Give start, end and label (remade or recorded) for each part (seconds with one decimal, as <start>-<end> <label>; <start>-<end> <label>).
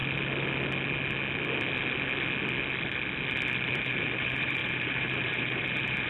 0.0-3.7 recorded; 3.7-6.1 remade